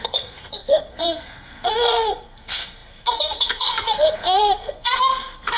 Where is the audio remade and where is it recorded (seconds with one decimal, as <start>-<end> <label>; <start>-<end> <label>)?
0.0-5.6 remade